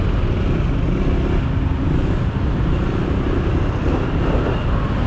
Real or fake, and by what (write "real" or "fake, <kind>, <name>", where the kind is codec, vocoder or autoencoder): real